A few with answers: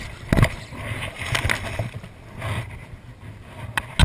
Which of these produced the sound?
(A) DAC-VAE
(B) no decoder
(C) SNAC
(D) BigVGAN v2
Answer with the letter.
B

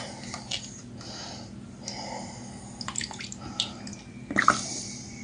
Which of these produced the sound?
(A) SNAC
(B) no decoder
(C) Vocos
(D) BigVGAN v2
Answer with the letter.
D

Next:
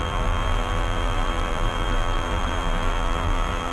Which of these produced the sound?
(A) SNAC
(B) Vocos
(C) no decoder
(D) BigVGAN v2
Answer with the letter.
D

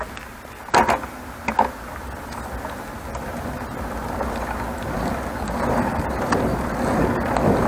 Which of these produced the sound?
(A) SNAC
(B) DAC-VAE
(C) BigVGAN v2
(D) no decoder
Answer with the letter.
D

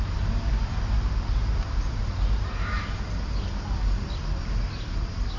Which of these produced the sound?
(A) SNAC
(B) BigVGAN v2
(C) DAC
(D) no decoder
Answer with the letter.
D